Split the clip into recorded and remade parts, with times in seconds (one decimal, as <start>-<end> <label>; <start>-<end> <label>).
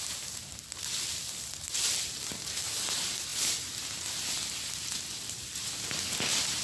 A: 0.0-6.6 recorded